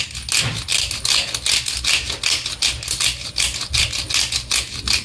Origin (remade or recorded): recorded